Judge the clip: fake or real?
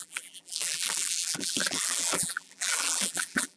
fake